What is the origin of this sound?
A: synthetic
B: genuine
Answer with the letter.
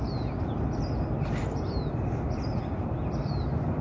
B